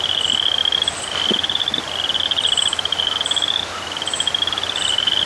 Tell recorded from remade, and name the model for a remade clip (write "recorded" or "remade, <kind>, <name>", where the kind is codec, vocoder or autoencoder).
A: recorded